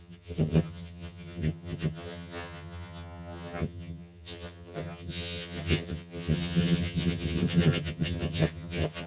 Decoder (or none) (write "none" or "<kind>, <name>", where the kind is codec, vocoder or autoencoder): vocoder, HiFi-GAN